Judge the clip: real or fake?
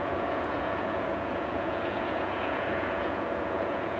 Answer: fake